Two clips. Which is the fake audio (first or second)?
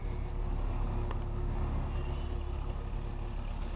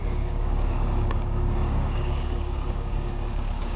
second